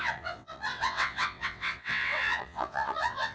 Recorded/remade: remade